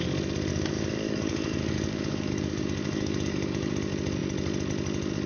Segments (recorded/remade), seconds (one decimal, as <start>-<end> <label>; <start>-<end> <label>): 0.0-0.5 recorded; 0.5-3.7 remade; 3.7-5.3 recorded